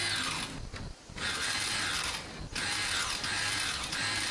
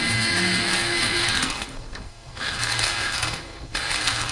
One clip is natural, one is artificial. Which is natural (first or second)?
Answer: first